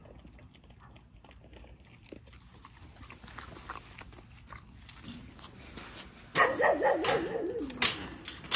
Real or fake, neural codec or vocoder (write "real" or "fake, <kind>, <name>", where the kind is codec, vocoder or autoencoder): real